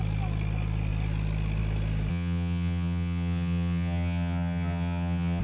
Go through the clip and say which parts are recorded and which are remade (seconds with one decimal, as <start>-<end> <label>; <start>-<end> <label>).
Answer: 0.0-2.1 recorded; 2.1-5.4 remade